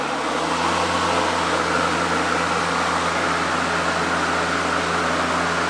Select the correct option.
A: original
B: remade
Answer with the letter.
A